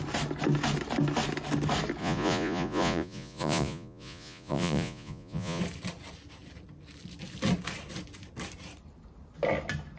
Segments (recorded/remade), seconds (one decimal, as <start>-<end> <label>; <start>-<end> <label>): 0.0-2.0 recorded; 2.0-5.6 remade; 5.6-10.0 recorded